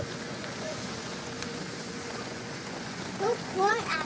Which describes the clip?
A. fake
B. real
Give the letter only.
A